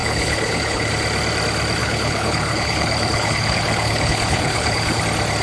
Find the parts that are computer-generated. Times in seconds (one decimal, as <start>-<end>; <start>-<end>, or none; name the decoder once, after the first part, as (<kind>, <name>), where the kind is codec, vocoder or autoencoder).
0.0-0.9 (codec, HILCodec); 1.8-5.0